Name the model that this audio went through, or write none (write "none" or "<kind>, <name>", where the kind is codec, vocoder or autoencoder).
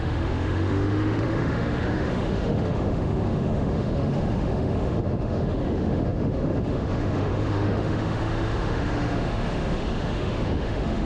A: autoencoder, DAC-VAE